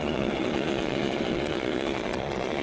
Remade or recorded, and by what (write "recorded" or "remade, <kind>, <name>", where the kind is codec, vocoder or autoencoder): remade, vocoder, Vocos